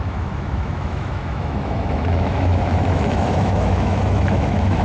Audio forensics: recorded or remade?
remade